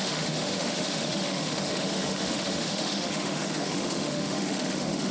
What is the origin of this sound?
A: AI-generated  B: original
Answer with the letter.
A